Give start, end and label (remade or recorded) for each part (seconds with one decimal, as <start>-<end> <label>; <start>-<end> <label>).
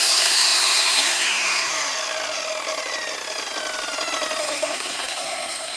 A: 0.0-1.7 remade; 1.7-4.4 recorded; 4.4-5.8 remade